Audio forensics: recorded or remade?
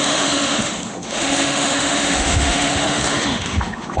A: remade